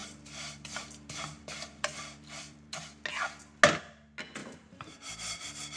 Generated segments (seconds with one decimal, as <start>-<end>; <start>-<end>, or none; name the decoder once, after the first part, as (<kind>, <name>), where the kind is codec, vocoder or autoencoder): 0.0-2.8 (vocoder, BigVGAN v2); 4.4-5.1